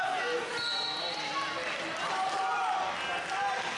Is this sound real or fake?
real